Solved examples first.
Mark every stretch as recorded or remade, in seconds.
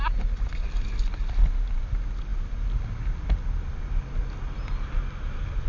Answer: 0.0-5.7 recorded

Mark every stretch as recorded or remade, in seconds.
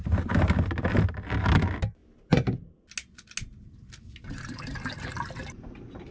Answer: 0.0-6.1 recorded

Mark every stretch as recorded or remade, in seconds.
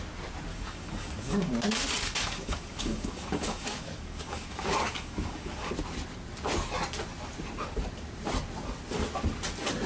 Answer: 0.0-0.5 recorded; 0.5-1.5 remade; 1.5-2.0 recorded; 2.0-5.7 remade; 5.7-9.9 recorded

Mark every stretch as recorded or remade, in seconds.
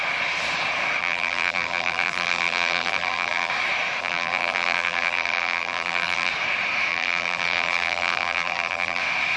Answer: 0.0-1.0 recorded; 1.0-3.5 remade; 3.5-4.0 recorded; 4.0-6.3 remade; 6.3-6.9 recorded; 6.9-9.0 remade; 9.0-9.4 recorded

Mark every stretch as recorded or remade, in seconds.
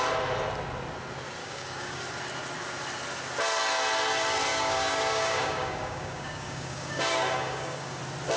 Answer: 0.0-1.4 recorded; 1.4-2.0 remade; 2.0-4.5 recorded; 4.5-8.0 remade; 8.0-8.4 recorded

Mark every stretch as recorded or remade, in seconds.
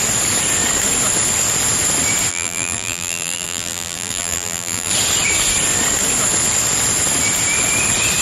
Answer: 0.0-2.3 recorded; 2.3-4.9 remade; 4.9-8.2 recorded